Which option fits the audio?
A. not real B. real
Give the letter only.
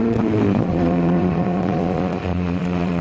A